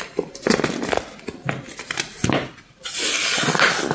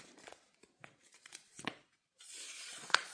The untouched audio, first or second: first